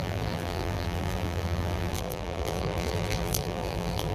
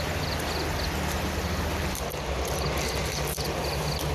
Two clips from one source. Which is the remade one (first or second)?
first